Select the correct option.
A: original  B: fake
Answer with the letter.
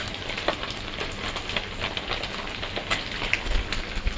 A